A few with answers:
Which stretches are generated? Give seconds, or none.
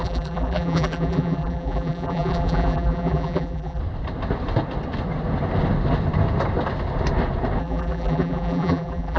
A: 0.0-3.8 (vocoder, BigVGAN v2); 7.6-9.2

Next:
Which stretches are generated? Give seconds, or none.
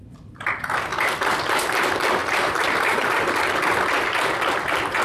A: 2.2-3.2 (vocoder, BigVGAN v2)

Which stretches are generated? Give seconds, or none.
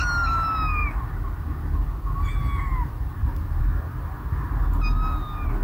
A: none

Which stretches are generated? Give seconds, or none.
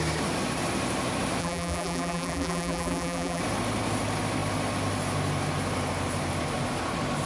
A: 1.4-3.4 (vocoder, BigVGAN v2)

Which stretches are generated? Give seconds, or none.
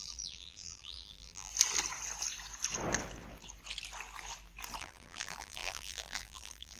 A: 0.0-1.5 (vocoder, BigVGAN v2); 4.8-6.8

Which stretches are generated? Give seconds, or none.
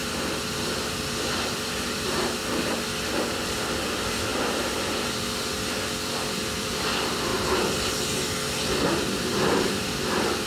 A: 0.0-2.5 (vocoder, BigVGAN v2); 4.3-6.8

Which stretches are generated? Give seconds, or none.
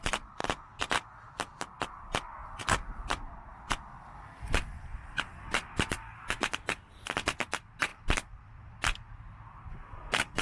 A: 2.4-6.2 (vocoder, BigVGAN v2); 7.9-8.8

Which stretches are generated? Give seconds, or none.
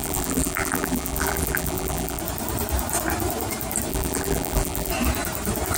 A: 0.0-2.2 (vocoder, BigVGAN v2); 3.9-4.9